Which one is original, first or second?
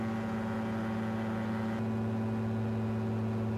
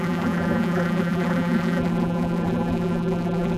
first